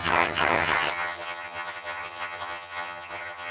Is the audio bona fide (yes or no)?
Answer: no